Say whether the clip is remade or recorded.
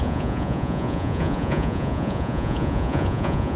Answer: remade